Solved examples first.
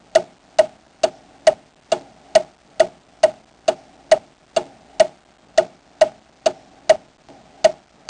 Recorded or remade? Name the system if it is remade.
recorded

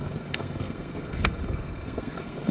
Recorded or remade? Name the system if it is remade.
remade, codec, SNAC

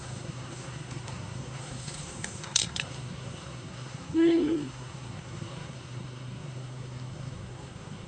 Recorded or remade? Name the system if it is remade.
remade, codec, SNAC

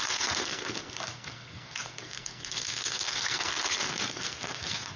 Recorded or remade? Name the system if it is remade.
remade, codec, SNAC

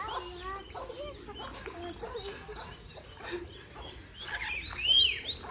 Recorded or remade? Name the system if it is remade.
recorded